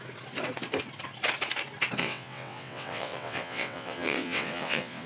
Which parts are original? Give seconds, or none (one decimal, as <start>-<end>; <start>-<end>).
0.0-2.0